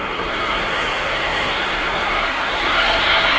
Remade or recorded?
remade